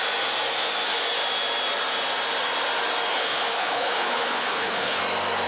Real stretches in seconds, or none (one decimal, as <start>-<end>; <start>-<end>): 0.0-3.1; 5.0-5.5